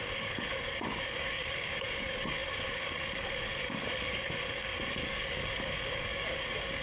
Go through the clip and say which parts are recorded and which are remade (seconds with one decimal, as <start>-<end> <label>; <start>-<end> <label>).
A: 0.0-6.8 remade